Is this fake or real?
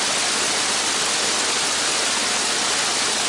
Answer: real